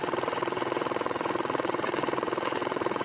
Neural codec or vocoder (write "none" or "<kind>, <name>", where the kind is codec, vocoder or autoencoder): vocoder, WaveNeXt